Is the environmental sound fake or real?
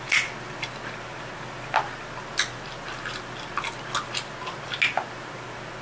real